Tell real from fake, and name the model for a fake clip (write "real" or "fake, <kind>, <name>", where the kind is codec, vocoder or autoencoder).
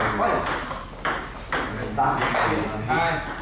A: real